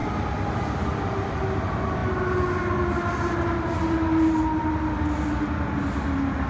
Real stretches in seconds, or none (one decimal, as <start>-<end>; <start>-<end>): 0.0-6.5